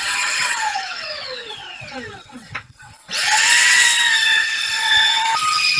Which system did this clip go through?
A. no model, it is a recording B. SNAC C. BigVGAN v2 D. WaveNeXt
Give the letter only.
D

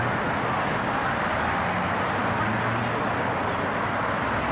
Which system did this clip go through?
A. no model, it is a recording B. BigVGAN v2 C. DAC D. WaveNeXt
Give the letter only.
A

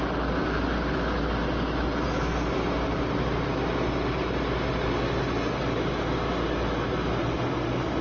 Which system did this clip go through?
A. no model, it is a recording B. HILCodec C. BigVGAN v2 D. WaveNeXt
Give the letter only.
A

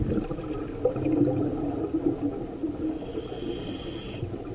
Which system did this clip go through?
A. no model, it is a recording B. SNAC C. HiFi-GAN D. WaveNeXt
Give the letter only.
A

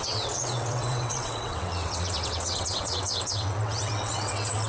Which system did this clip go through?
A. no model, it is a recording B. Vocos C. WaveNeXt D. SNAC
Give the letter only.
C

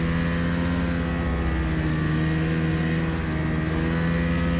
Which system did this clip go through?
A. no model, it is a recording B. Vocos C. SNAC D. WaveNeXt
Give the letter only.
A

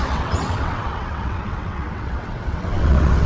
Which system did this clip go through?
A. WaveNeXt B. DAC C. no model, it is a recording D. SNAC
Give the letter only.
A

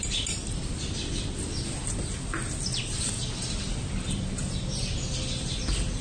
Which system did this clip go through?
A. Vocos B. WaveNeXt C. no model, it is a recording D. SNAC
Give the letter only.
C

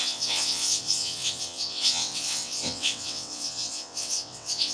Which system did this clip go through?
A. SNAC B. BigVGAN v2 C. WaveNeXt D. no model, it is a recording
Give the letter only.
C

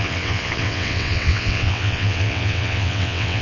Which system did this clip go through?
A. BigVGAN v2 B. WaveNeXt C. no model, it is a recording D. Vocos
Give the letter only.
B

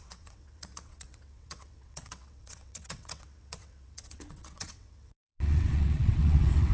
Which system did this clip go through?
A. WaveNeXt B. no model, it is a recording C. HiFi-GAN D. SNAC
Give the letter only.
A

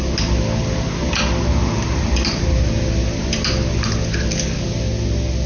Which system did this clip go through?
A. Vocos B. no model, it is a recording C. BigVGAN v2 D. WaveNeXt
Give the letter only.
B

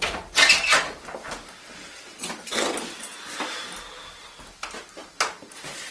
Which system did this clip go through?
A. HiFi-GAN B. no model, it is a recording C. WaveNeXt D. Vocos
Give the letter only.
B